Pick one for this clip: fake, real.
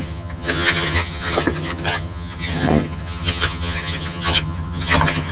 fake